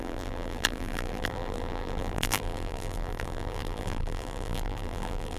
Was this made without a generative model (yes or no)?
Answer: no